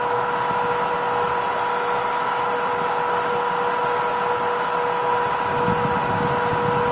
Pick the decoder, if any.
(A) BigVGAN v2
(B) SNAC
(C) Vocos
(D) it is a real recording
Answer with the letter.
D